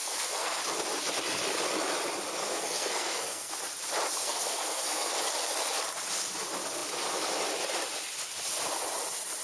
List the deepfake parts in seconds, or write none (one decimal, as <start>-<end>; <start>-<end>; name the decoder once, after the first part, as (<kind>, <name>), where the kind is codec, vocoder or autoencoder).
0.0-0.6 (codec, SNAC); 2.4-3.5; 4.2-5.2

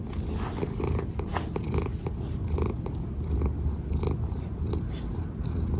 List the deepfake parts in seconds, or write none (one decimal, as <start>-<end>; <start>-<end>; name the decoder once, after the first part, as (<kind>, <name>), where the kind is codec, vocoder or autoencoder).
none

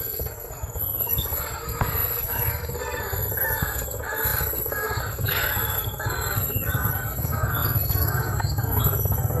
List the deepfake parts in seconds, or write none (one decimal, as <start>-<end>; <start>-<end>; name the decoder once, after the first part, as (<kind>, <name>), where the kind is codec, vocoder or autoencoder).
0.0-9.4 (codec, SNAC)

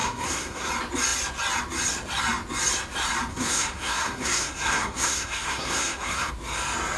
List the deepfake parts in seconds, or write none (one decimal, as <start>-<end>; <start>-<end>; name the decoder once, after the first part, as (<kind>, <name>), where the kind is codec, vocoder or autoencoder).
0.0-0.7 (codec, SNAC); 3.3-6.3

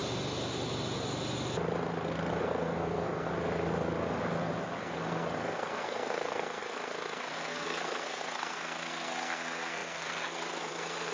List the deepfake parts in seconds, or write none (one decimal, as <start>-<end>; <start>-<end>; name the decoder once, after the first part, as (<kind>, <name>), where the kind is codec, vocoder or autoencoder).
2.3-3.3 (codec, SNAC); 4.8-11.1

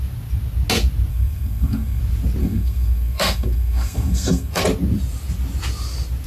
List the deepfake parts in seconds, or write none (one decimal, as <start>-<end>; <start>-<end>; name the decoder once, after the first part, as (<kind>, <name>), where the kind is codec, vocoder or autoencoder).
1.1-2.0 (codec, SNAC); 2.4-4.6

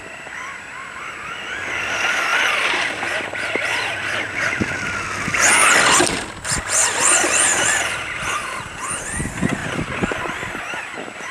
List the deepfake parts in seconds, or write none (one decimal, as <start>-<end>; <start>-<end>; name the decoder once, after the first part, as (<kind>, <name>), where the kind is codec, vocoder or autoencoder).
none